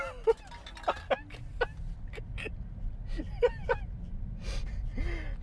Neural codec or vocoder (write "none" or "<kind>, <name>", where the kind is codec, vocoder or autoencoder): none